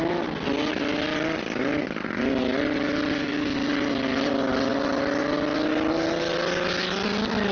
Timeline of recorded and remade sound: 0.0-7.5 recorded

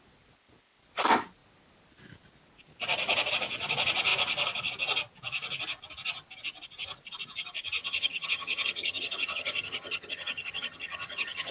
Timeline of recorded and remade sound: 0.0-7.8 recorded; 7.8-11.5 remade

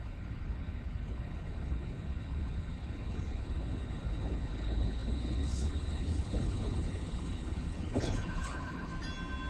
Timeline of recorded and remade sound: 0.0-8.9 remade; 8.9-9.5 recorded